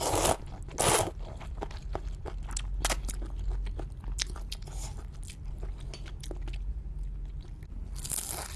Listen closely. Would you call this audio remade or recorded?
recorded